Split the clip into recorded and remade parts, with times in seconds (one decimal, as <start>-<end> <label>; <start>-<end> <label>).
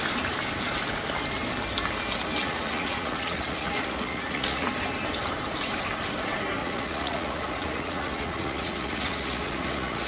0.0-2.4 recorded; 2.4-4.7 remade; 4.7-6.6 recorded; 6.6-10.1 remade